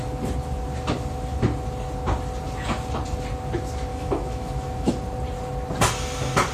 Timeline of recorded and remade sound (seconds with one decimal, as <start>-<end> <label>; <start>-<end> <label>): 0.0-3.9 recorded; 3.9-4.9 remade; 4.9-6.5 recorded